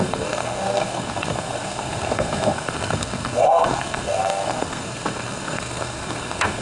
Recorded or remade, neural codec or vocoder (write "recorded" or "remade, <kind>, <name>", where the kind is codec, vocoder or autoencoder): remade, codec, SNAC